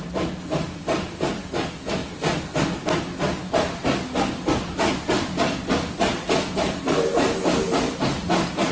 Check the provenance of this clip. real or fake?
real